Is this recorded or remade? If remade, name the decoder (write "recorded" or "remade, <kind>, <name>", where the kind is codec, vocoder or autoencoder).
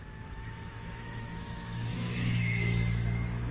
remade, autoencoder, DAC-VAE